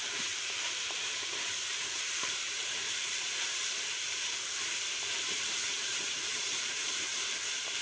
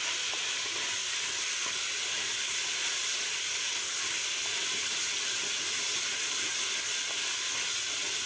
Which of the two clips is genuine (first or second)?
second